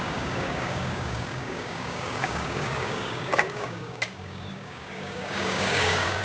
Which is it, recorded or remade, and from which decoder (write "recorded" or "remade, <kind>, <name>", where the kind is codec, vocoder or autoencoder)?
remade, codec, DAC